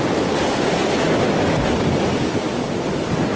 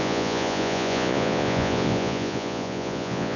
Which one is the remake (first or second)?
second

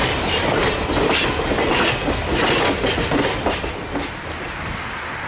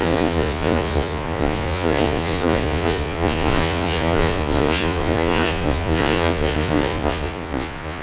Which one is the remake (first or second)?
second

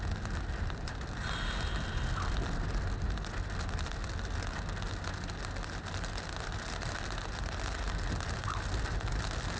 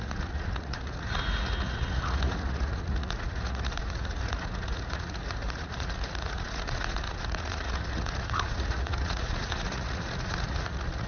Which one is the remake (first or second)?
second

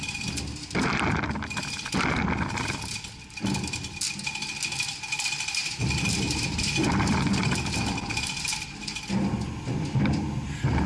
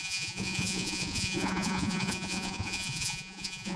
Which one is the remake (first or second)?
second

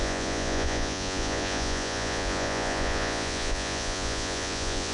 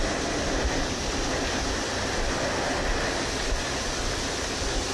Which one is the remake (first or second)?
first